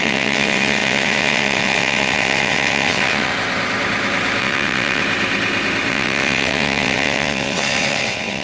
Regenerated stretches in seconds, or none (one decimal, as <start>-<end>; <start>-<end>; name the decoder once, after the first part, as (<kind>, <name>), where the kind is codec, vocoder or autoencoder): 0.0-3.3 (vocoder, WaveNeXt); 4.4-5.0; 5.9-8.4